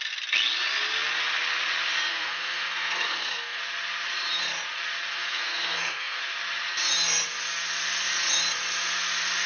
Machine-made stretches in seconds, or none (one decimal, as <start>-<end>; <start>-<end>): 2.1-3.6; 5.1-6.2